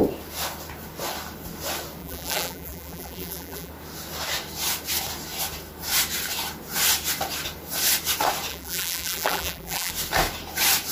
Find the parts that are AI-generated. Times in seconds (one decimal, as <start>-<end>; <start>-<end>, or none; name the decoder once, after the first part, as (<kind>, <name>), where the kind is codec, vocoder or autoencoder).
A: 2.0-3.7 (vocoder, BigVGAN v2); 8.5-9.9